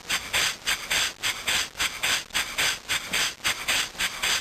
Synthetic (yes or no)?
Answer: no